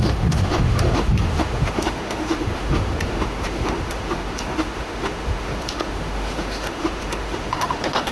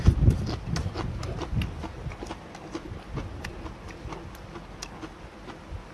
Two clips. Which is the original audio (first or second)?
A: second